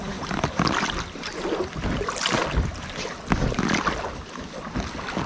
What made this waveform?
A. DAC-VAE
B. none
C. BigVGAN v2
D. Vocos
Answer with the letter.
B